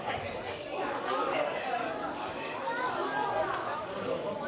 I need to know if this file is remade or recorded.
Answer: remade